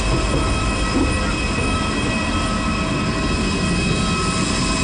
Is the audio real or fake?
real